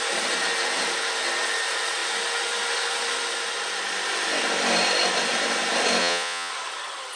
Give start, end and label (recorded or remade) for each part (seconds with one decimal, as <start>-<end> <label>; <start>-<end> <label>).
0.0-6.0 recorded; 6.0-6.5 remade; 6.5-7.2 recorded